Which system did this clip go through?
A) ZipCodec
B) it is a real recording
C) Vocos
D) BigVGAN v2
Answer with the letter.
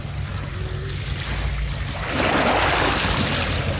B